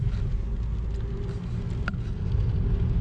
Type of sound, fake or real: real